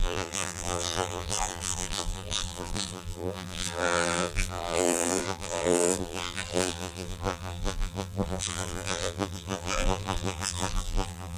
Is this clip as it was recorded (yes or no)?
no